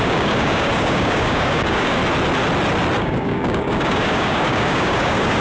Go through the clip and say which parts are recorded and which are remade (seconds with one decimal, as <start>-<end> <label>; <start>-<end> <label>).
0.0-2.0 remade; 2.0-3.0 recorded; 3.0-5.4 remade